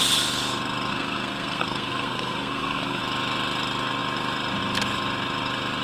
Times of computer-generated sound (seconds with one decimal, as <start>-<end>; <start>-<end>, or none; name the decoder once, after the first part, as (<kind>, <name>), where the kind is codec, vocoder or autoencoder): 0.9-3.0 (codec, SNAC)

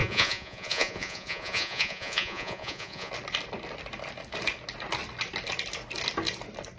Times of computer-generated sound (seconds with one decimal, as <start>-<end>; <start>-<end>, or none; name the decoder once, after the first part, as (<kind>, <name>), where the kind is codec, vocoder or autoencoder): 0.0-3.1 (vocoder, Vocos)

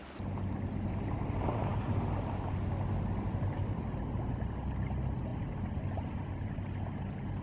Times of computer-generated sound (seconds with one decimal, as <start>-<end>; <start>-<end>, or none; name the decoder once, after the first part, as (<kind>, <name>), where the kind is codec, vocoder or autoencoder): none

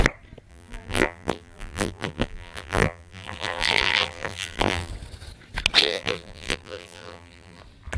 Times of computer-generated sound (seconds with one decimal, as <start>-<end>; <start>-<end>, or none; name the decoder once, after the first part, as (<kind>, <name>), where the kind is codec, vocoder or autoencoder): 0.5-4.9 (vocoder, BigVGAN v2); 5.8-7.6

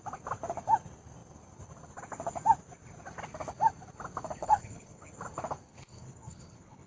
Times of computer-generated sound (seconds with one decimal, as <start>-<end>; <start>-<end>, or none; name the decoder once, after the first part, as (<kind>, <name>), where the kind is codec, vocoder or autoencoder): 4.4-5.1 (codec, HILCodec); 5.7-6.9

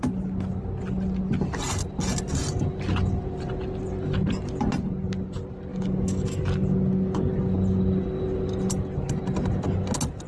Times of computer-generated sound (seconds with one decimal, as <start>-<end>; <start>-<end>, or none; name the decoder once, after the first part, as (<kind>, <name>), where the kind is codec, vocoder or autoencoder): 5.7-6.4 (codec, DAC)

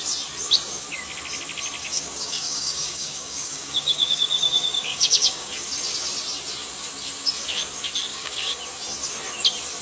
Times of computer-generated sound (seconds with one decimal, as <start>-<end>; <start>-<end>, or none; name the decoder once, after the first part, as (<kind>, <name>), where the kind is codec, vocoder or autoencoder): 1.8-5.5 (codec, DAC); 8.1-8.6